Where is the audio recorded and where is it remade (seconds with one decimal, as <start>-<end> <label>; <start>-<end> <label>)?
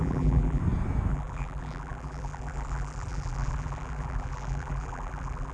0.0-0.6 remade; 0.6-1.1 recorded; 1.1-5.5 remade